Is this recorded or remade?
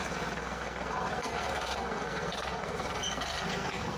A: remade